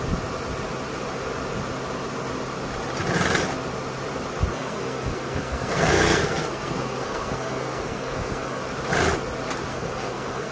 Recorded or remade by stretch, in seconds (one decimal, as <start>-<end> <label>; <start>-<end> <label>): 0.0-4.5 recorded; 4.5-8.6 remade; 8.6-9.7 recorded; 9.7-10.5 remade